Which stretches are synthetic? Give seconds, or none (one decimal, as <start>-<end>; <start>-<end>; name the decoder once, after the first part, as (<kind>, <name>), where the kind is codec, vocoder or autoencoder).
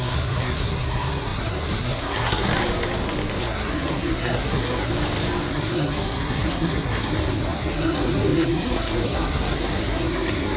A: 0.0-2.5 (codec, SNAC); 3.4-4.9; 5.5-10.6